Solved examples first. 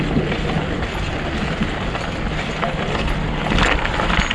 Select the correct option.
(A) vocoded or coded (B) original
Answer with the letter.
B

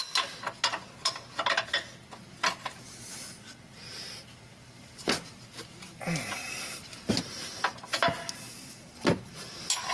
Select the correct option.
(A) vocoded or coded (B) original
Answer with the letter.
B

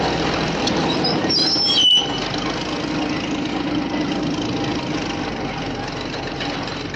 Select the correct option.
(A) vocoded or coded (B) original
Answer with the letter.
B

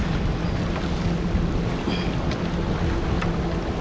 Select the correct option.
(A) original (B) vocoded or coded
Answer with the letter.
A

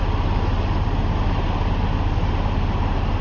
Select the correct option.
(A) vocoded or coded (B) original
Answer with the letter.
B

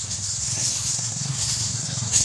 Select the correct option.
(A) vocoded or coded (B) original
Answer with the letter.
A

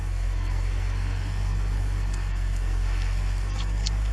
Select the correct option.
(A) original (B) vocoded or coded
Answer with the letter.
B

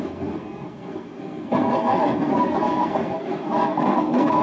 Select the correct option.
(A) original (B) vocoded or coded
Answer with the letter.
B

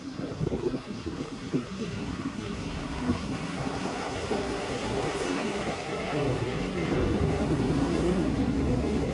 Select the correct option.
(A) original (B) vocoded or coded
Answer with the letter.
B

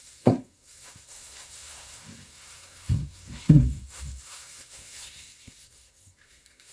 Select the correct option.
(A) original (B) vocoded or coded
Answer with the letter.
B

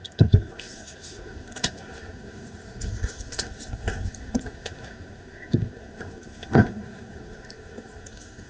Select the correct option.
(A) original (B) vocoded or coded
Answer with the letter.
B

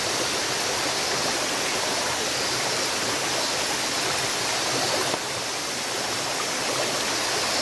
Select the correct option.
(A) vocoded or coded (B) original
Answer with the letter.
B